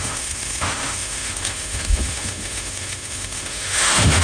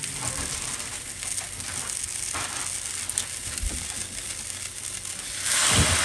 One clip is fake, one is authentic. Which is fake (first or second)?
first